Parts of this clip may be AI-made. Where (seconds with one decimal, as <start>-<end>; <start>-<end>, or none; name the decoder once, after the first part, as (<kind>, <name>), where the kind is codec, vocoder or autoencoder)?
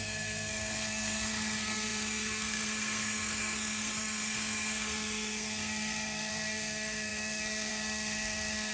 0.0-8.7 (codec, SNAC)